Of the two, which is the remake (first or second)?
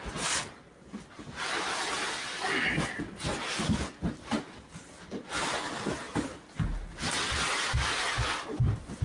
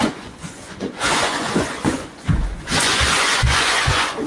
second